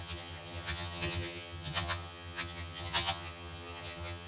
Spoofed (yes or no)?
yes